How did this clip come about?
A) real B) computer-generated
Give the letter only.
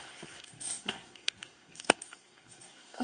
B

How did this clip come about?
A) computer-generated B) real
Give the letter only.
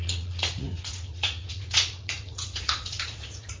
A